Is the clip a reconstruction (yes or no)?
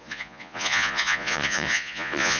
yes